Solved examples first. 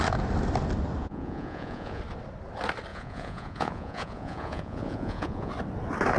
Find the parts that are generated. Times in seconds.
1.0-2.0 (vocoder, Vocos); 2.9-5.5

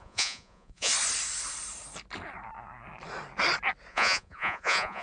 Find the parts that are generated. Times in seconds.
0.0-0.9 (vocoder, Vocos); 3.9-5.0

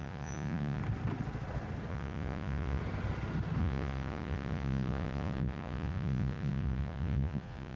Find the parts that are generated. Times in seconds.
0.0-0.8 (vocoder, Vocos); 1.9-2.8; 3.6-7.8

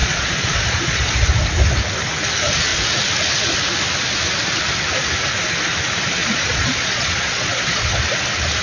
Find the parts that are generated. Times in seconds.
0.0-1.1 (vocoder, Vocos); 6.2-8.0

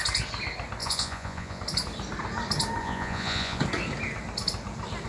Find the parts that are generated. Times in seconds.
0.8-1.6 (vocoder, Vocos); 2.8-3.6

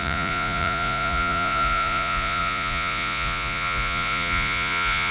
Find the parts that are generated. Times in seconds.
0.0-5.1 (vocoder, Vocos)

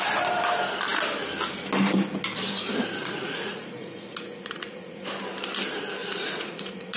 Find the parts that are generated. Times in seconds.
3.0-5.0 (vocoder, Vocos); 6.0-7.0